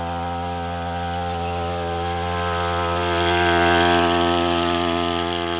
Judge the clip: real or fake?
real